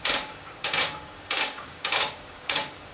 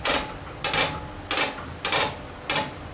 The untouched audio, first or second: second